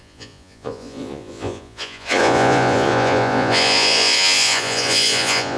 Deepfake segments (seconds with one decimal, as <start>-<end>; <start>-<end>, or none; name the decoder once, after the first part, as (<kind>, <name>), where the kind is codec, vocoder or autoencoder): 0.0-5.6 (vocoder, Vocos)